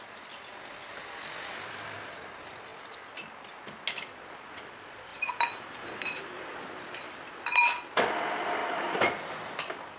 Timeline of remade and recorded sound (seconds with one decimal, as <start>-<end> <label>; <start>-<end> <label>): 0.0-5.1 recorded; 5.1-6.6 remade; 6.6-8.6 recorded; 8.6-9.5 remade; 9.5-10.0 recorded